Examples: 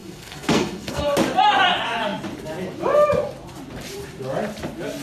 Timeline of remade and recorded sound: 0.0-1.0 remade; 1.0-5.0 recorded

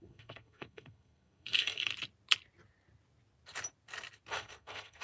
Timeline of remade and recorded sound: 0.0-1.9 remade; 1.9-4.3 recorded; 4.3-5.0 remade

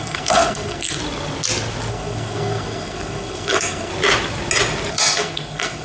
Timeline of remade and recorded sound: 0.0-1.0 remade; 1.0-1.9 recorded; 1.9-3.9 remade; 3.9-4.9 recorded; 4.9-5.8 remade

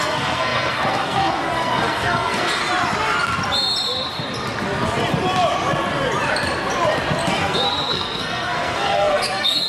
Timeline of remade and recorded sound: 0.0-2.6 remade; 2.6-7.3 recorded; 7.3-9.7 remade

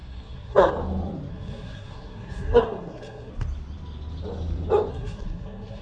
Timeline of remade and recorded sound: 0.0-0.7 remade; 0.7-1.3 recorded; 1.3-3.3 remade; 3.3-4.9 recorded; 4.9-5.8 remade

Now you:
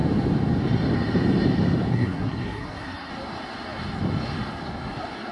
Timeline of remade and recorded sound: 0.0-1.9 recorded; 1.9-3.1 remade; 3.1-5.3 recorded